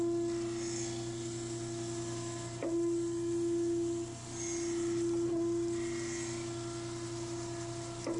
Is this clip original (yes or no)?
yes